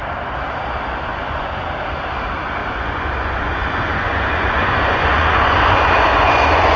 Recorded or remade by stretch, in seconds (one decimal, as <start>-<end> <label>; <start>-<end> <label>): 0.0-1.1 recorded; 1.1-1.6 remade; 1.6-2.6 recorded; 2.6-6.8 remade